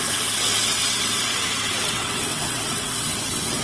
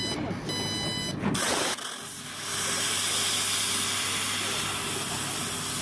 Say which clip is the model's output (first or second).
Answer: first